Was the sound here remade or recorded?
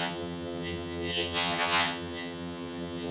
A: remade